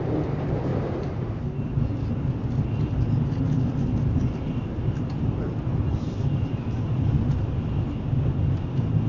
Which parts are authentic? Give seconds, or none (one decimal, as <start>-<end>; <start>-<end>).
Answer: 0.0-0.7; 1.4-9.1